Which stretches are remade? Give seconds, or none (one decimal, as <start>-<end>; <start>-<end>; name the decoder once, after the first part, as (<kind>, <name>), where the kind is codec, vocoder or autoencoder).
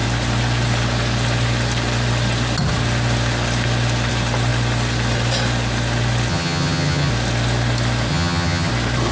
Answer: 6.3-7.1 (vocoder, HiFi-GAN); 8.1-8.7